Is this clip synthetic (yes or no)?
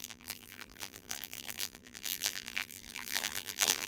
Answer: yes